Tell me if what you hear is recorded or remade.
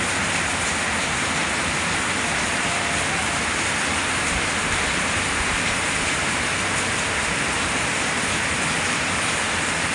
recorded